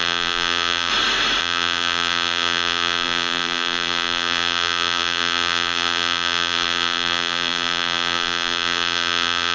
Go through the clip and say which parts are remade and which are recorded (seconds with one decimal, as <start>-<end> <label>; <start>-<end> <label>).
0.0-0.9 remade; 0.9-1.4 recorded; 1.4-9.5 remade